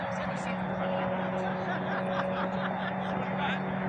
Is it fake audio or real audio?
real